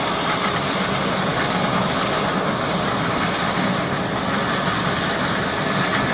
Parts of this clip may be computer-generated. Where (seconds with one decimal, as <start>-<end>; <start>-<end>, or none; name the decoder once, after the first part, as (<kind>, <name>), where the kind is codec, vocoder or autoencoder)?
none